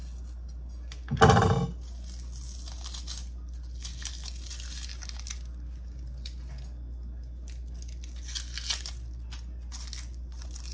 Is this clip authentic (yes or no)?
yes